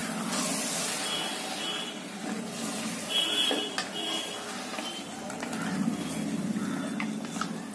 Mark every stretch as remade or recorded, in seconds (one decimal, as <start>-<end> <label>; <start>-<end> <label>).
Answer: 0.0-4.7 recorded; 4.7-5.9 remade; 5.9-7.7 recorded